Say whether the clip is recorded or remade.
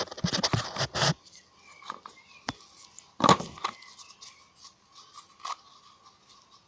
recorded